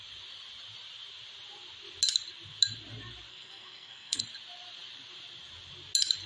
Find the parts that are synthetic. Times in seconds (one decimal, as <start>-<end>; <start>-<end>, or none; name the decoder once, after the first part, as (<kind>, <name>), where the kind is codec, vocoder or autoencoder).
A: 3.3-4.2 (codec, SNAC)